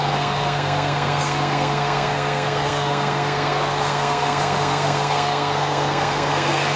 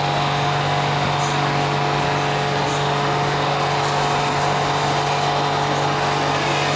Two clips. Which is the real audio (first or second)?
second